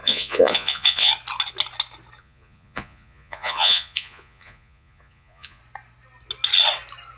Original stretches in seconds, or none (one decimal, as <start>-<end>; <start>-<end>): 1.1-2.2; 5.6-7.2

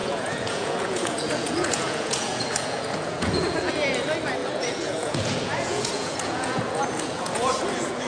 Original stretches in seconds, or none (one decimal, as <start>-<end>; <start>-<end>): 3.7-4.4

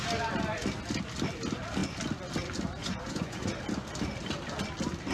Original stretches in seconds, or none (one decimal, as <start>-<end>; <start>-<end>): 0.0-2.8; 3.5-5.1

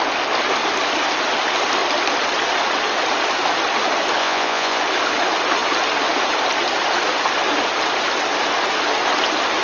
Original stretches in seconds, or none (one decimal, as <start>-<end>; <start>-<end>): 0.0-4.2; 4.8-9.6

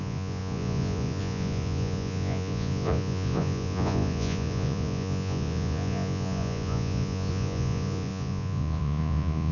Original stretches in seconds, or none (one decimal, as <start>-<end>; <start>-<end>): none

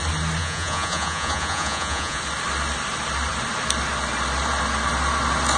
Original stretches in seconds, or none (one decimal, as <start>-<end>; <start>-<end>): 0.0-0.4; 2.2-5.6

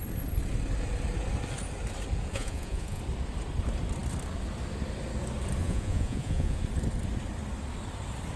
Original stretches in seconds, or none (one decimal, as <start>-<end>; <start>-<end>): 0.0-2.3; 3.0-5.6; 6.6-8.4

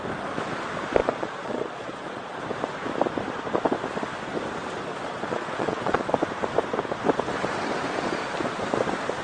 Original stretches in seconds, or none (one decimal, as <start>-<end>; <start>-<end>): 0.0-1.0; 2.4-4.9; 6.1-9.2